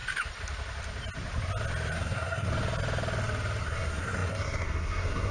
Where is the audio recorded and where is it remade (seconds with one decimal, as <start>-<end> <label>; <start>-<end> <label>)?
0.0-1.9 recorded; 1.9-2.5 remade; 2.5-3.6 recorded; 3.6-5.3 remade